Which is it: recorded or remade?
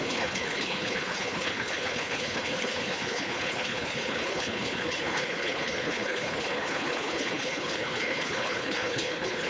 remade